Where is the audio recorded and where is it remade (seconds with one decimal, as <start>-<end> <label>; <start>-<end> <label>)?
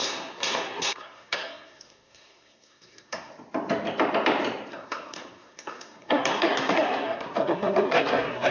0.0-3.3 remade; 3.3-4.7 recorded; 4.7-8.5 remade